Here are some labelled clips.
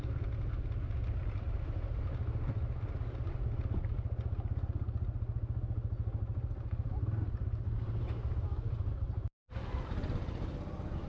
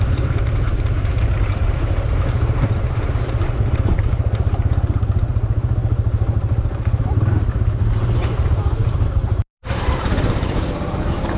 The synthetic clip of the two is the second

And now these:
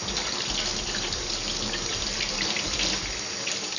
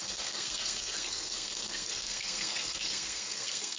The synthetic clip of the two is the second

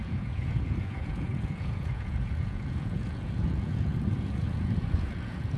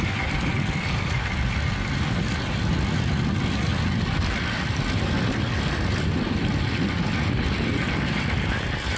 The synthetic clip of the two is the first